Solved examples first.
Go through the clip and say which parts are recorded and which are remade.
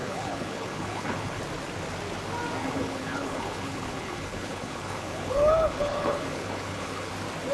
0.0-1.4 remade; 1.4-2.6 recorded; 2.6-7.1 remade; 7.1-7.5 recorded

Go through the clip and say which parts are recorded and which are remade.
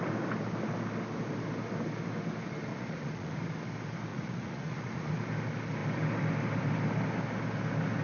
0.0-2.7 recorded; 2.7-3.4 remade; 3.4-4.1 recorded; 4.1-5.1 remade; 5.1-8.0 recorded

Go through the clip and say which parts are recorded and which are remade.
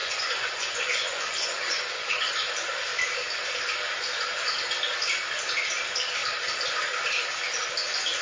0.0-2.3 remade; 2.3-8.2 recorded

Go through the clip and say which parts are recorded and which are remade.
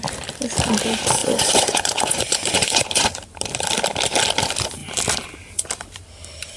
0.0-1.2 recorded; 1.2-3.1 remade; 3.1-6.6 recorded